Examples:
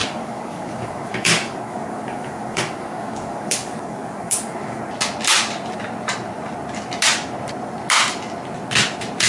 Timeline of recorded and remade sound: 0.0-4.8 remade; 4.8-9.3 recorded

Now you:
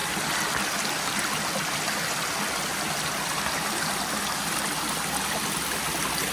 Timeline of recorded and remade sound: 0.0-6.3 recorded

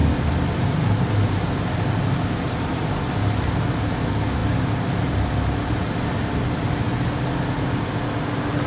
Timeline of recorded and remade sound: 0.0-8.7 recorded

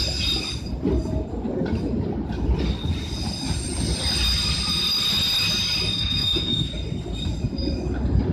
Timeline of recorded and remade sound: 0.0-5.9 recorded; 5.9-6.7 remade; 6.7-8.3 recorded

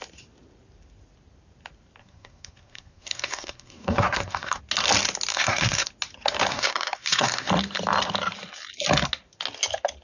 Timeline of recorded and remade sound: 0.0-2.0 recorded; 2.0-4.6 remade; 4.6-5.3 recorded; 5.3-5.9 remade; 5.9-6.5 recorded; 6.5-7.5 remade; 7.5-10.0 recorded

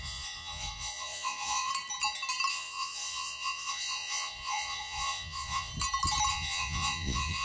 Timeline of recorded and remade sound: 0.0-1.7 remade; 1.7-2.5 recorded; 2.5-5.7 remade; 5.7-6.3 recorded; 6.3-7.4 remade

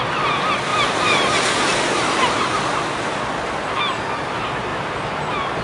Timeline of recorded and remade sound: 0.0-0.7 recorded; 0.7-3.2 remade; 3.2-4.7 recorded; 4.7-5.6 remade

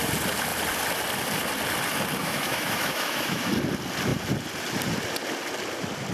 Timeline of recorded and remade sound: 0.0-2.2 recorded; 2.2-3.5 remade; 3.5-6.1 recorded